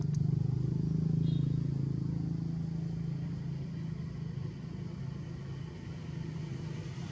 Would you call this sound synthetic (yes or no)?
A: no